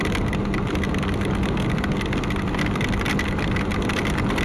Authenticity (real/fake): real